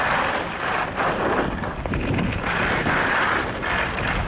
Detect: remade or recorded recorded